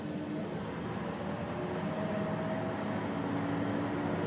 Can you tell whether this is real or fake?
real